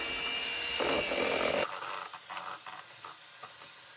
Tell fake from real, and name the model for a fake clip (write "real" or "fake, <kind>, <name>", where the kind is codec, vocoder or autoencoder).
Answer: real